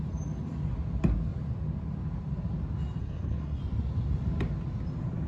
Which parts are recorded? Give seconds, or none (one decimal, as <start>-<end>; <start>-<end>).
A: 0.0-3.0; 3.6-5.3